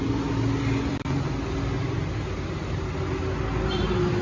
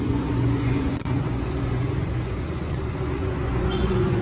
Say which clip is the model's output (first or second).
second